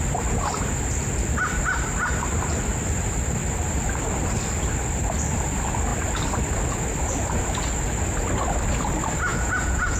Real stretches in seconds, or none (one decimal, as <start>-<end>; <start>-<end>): 0.0-9.3